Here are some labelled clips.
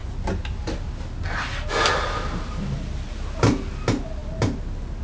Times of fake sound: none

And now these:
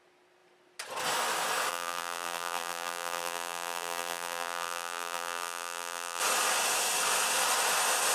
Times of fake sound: 1.7-6.2 (vocoder, BigVGAN v2)

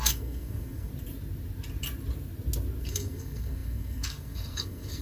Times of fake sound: 0.0-0.9 (codec, SNAC); 2.8-5.0

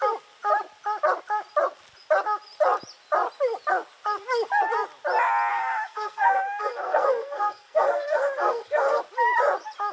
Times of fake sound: 5.5-9.0 (codec, SNAC)

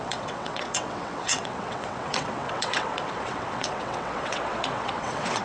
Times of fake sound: 0.0-5.4 (vocoder, WaveNeXt)

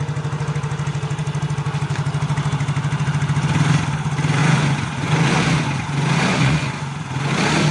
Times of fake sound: 4.4-7.3 (vocoder, Vocos)

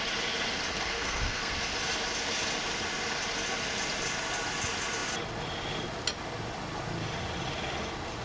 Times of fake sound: 0.7-1.5 (codec, SNAC)